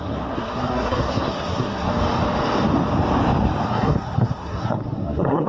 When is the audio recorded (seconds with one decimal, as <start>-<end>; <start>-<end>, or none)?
1.9-3.7